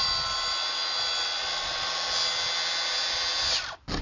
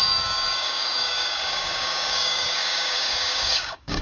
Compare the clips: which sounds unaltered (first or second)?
first